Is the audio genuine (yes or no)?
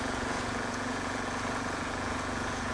no